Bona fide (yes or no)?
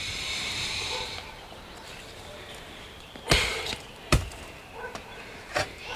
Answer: no